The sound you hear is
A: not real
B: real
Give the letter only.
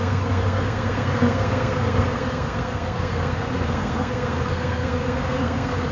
A